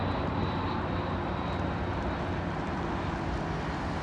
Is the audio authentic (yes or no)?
yes